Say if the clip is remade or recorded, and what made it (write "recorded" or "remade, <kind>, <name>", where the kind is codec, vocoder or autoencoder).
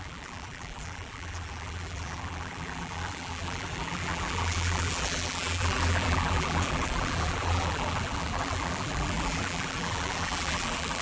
remade, vocoder, BigVGAN v2